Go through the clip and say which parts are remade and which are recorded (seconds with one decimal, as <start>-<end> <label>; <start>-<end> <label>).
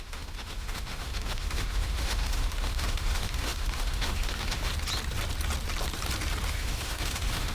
0.0-4.7 remade; 4.7-6.5 recorded; 6.5-7.5 remade